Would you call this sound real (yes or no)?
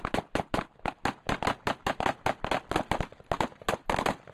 yes